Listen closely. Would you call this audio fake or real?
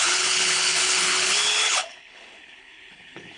fake